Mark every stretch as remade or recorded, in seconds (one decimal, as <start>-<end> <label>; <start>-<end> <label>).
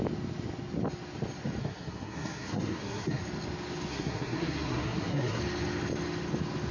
0.0-1.6 recorded; 1.6-3.2 remade; 3.2-3.9 recorded; 3.9-5.4 remade; 5.4-6.7 recorded